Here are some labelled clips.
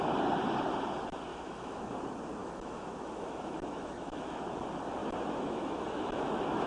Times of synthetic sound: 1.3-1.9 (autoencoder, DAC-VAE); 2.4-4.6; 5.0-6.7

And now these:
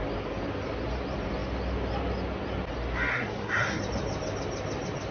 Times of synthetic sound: 3.1-3.8 (codec, SNAC)

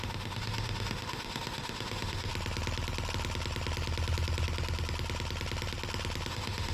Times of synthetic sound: 0.0-2.3 (autoencoder, DAC-VAE); 6.3-6.7

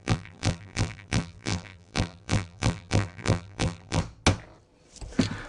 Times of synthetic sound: 0.0-4.0 (vocoder, BigVGAN v2)

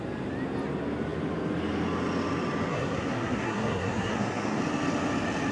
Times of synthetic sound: 2.7-4.6 (codec, SNAC)

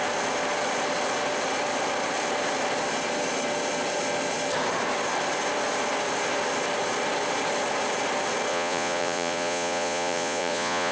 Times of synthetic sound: 8.5-10.9 (vocoder, Vocos)

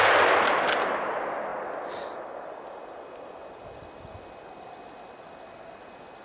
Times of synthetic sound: none

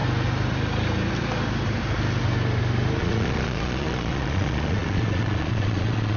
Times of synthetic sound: 3.0-6.2 (vocoder, Vocos)